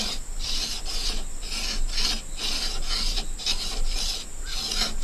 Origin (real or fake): real